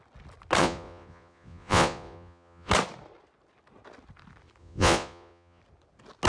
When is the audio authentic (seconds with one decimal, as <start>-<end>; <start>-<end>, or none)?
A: 0.0-0.6; 2.7-4.6; 5.6-6.3